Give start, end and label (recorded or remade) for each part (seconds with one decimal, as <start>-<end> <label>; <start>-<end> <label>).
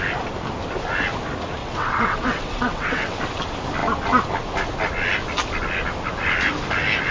0.0-1.6 recorded; 1.6-3.2 remade; 3.2-7.1 recorded